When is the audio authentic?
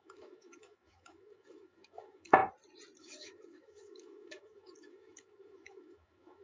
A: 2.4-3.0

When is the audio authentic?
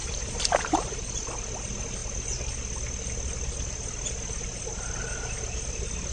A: 1.0-6.1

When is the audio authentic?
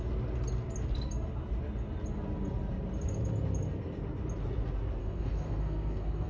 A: 0.0-5.0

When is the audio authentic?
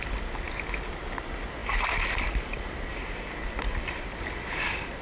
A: 0.0-5.0